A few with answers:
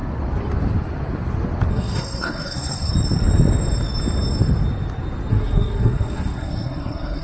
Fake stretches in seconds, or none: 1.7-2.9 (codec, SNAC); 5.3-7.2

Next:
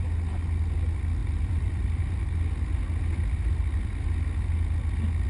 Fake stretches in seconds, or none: 1.2-2.3 (vocoder, BigVGAN v2)

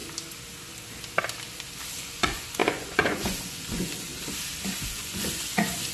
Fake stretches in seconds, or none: 2.0-4.1 (vocoder, Vocos); 4.7-5.9

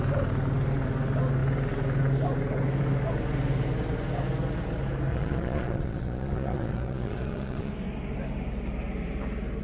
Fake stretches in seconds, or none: 5.1-7.7 (vocoder, Vocos)